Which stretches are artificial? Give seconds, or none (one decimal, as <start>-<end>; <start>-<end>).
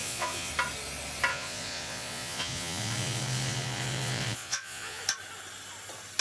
0.0-0.5; 1.3-5.0